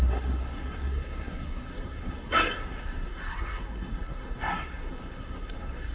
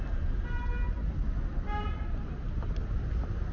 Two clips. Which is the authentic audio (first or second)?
second